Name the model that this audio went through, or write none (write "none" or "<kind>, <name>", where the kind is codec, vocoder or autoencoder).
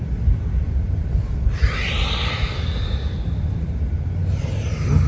none